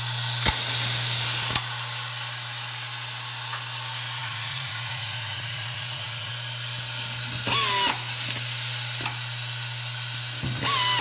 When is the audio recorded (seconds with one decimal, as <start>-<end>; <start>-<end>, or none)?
0.0-4.2; 6.3-11.0